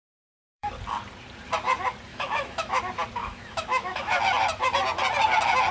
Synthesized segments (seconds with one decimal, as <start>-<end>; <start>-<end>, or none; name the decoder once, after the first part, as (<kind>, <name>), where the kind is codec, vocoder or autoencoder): 0.0-0.7 (autoencoder, DAC-VAE); 2.1-2.8; 3.2-4.2